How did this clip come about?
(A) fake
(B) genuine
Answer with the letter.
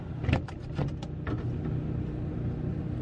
B